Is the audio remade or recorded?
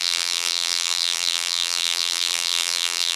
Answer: remade